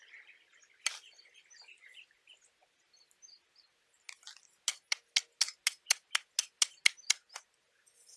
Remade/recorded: recorded